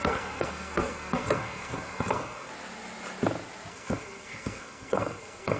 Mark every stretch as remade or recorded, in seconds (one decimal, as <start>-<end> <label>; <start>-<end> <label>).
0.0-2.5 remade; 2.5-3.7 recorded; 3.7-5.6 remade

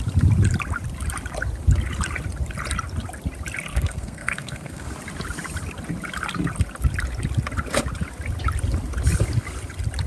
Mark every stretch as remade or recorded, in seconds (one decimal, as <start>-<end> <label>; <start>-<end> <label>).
0.0-3.7 recorded; 3.7-4.9 remade; 4.9-10.1 recorded

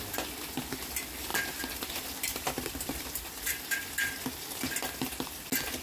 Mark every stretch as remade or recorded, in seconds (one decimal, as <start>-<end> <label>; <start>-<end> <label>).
0.0-1.3 recorded; 1.3-3.8 remade; 3.8-5.8 recorded

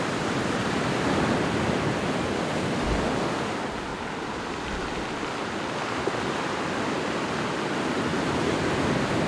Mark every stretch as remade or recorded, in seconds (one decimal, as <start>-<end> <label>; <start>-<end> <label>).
0.0-3.9 recorded; 3.9-4.5 remade; 4.5-8.1 recorded; 8.1-8.8 remade; 8.8-9.3 recorded

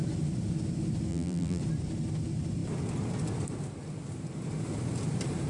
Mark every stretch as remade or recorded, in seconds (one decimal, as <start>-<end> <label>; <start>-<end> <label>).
0.0-1.1 recorded; 1.1-1.6 remade; 1.6-5.5 recorded

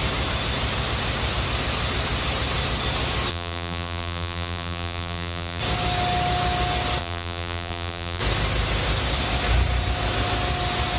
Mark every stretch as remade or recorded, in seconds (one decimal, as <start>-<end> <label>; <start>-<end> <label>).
0.0-3.3 recorded; 3.3-5.6 remade; 5.6-7.0 recorded; 7.0-8.2 remade; 8.2-11.0 recorded

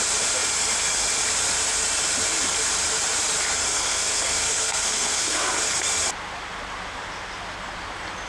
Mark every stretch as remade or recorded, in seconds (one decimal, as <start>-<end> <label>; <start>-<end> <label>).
0.0-3.7 recorded; 3.7-5.5 remade; 5.5-8.3 recorded